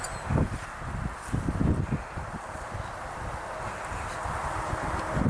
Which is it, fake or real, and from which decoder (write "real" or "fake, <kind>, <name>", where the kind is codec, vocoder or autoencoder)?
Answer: real